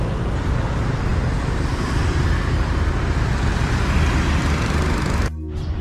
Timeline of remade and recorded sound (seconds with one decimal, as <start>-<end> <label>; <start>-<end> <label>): 0.0-5.8 recorded